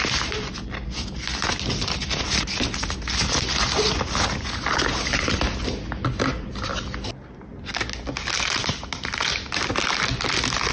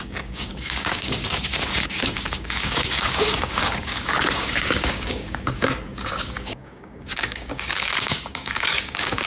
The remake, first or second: second